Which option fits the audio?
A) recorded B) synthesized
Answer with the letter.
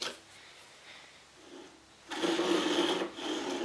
A